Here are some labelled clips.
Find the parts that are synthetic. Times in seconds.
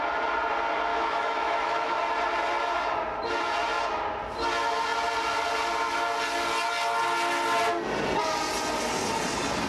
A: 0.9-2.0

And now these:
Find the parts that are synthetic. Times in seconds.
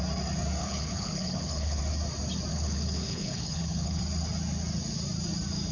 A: 0.6-1.8; 2.5-4.0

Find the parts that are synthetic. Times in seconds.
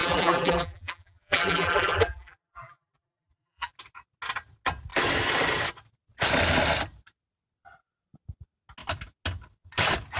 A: 0.0-3.7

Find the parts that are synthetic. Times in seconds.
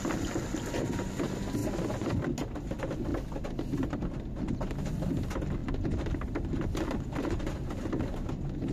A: none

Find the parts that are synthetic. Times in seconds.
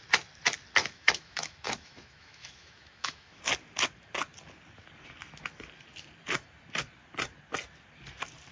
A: 0.8-3.4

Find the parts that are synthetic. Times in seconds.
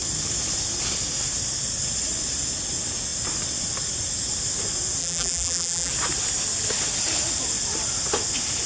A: 5.0-5.9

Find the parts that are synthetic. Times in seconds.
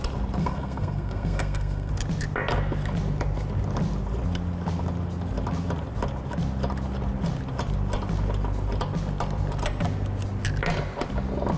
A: 0.4-1.9